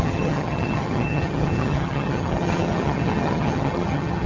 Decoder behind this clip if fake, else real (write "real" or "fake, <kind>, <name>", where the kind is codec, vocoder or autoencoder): fake, vocoder, HiFi-GAN